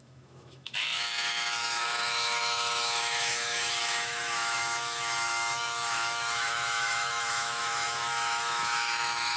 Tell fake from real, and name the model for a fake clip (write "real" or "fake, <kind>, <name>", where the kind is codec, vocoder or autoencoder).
fake, autoencoder, DAC-VAE